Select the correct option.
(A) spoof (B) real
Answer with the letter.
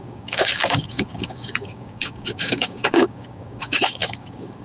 A